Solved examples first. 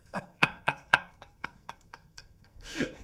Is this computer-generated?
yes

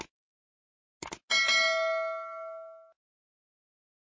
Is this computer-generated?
no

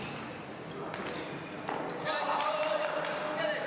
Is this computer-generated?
no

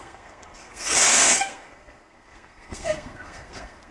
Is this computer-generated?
yes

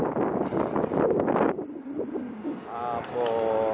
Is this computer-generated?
no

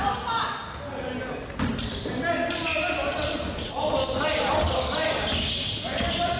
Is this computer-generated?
no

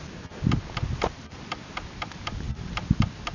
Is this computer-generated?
no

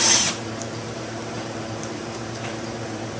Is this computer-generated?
yes